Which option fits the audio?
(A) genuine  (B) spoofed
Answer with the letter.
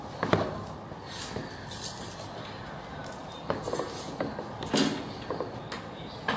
A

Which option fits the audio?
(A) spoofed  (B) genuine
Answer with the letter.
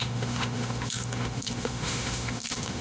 A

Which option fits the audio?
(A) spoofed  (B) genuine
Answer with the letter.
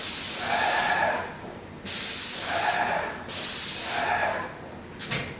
B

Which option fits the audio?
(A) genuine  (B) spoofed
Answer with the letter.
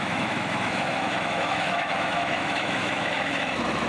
B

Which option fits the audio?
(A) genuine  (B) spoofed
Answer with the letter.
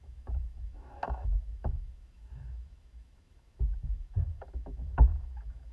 B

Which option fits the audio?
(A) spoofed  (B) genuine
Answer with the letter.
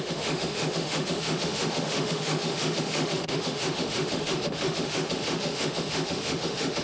A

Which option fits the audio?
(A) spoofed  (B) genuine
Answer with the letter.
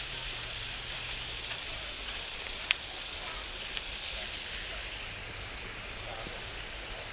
B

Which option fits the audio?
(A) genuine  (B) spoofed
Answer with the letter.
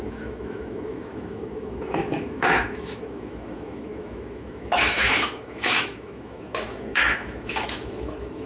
B